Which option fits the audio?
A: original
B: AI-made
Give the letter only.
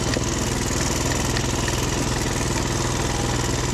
A